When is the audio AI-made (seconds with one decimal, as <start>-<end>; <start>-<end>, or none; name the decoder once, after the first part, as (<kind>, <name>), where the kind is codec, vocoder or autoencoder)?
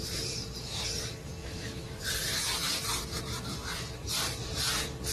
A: 1.4-2.0 (autoencoder, DAC-VAE)